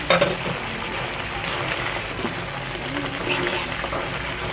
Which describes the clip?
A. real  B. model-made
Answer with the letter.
A